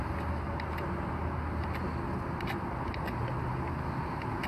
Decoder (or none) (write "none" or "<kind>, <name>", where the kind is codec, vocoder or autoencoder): none